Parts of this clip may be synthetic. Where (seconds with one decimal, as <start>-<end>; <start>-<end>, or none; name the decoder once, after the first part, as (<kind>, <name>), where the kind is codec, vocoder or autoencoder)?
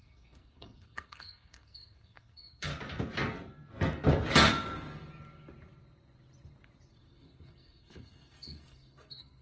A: 0.0-2.7 (codec, SNAC); 6.9-9.4